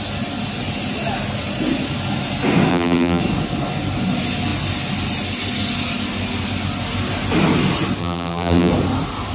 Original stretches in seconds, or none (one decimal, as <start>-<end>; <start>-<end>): 0.0-2.7; 3.2-8.0; 8.7-9.3